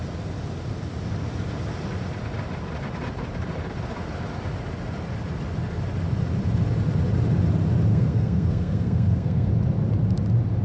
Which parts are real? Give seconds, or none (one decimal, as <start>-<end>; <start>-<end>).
0.0-7.9; 9.5-10.6